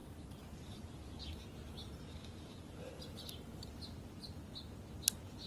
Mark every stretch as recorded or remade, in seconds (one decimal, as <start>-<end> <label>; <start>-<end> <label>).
0.0-1.2 remade; 1.2-2.5 recorded; 2.5-3.7 remade; 3.7-5.5 recorded